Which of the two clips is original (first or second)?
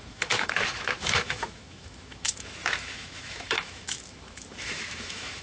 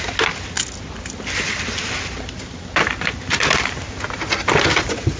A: second